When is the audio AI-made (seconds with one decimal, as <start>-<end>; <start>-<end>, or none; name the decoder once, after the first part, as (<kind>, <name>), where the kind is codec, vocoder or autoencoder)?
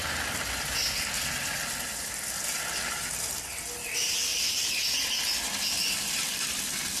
4.3-4.8 (vocoder, BigVGAN v2)